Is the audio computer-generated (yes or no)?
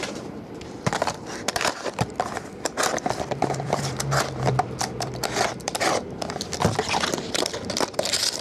yes